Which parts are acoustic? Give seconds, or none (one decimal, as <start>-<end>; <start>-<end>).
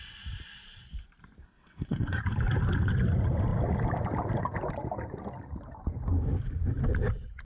0.0-1.4; 2.2-7.4